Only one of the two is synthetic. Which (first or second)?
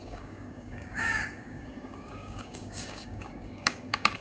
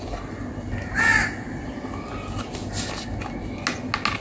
first